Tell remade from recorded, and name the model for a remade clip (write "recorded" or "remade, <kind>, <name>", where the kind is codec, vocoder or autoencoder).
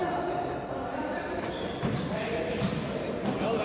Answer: recorded